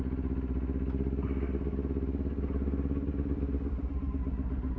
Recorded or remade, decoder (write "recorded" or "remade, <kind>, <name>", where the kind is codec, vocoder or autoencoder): recorded